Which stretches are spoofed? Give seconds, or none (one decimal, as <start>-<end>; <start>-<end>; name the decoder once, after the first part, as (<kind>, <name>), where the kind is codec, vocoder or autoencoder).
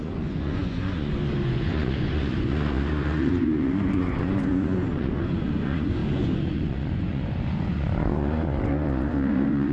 0.0-9.7 (vocoder, Vocos)